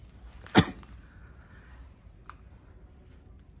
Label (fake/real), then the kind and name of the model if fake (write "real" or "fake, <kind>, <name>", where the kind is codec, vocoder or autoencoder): real